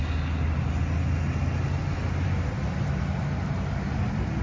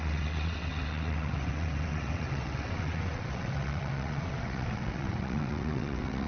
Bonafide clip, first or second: first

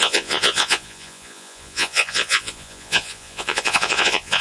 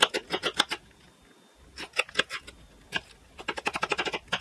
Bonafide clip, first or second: second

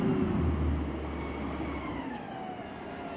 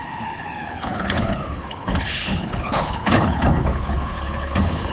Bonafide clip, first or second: first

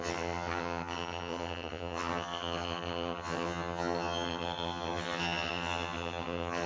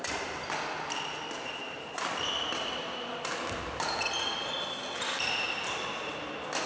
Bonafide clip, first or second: second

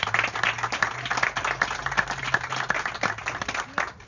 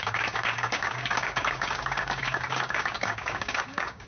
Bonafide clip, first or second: first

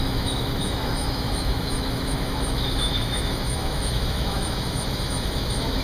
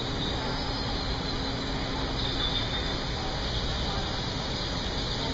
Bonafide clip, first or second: second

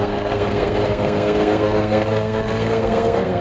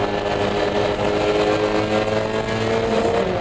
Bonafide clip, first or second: second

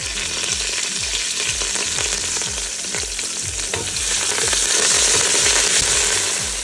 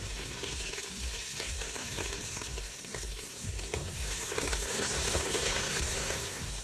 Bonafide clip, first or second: first